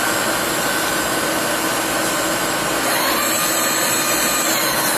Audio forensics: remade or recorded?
recorded